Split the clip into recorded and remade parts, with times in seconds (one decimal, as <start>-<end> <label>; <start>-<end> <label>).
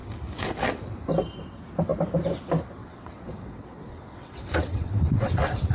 0.0-2.8 recorded; 2.8-5.7 remade